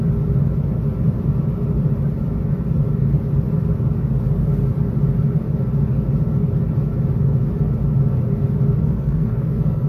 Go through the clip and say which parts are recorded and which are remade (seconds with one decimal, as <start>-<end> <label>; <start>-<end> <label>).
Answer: 0.0-8.8 recorded; 8.8-9.9 remade